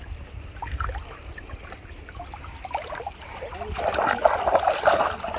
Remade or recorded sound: recorded